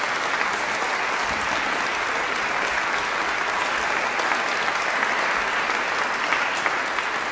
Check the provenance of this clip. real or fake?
real